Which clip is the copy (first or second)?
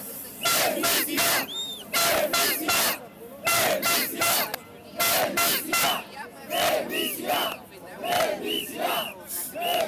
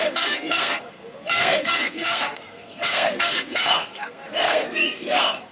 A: second